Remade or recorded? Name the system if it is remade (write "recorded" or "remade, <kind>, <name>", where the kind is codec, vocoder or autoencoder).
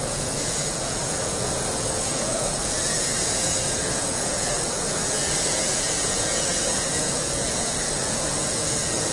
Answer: remade, vocoder, Vocos